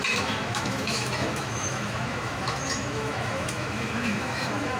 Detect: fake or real fake